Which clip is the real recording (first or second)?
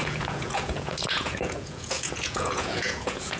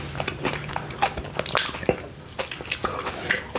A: second